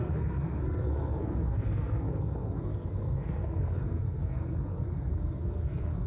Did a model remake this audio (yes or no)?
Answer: yes